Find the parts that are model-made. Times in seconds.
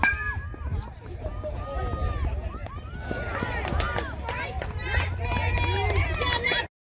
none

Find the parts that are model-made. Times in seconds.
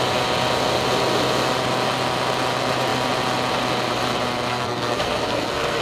4.5-5.8 (codec, SNAC)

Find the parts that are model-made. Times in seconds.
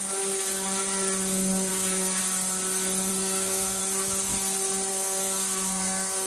1.7-2.2 (codec, SNAC); 3.1-3.8; 4.9-6.3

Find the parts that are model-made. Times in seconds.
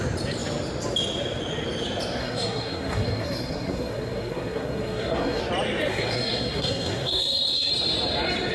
2.2-5.4 (codec, SNAC); 5.9-7.7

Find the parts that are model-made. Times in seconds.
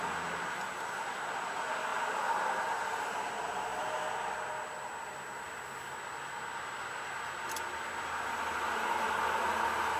none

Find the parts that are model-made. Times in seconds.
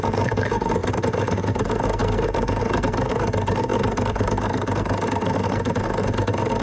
0.0-6.6 (codec, SNAC)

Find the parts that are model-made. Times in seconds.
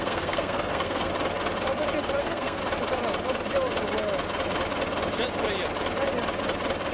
0.0-1.1 (codec, SNAC); 2.2-2.6